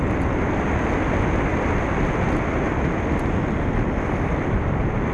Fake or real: real